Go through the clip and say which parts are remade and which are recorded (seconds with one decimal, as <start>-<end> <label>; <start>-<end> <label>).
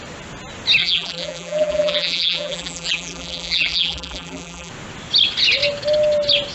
0.0-0.8 recorded; 0.8-4.7 remade; 4.7-6.5 recorded